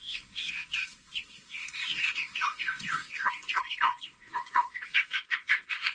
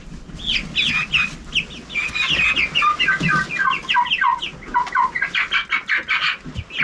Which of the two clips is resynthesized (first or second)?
first